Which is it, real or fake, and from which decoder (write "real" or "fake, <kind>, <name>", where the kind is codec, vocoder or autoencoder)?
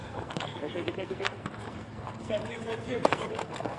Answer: fake, codec, SNAC